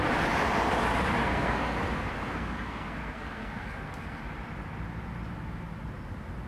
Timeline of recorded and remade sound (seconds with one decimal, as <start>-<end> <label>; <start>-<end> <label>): 0.0-1.2 recorded; 1.2-4.2 remade; 4.2-6.5 recorded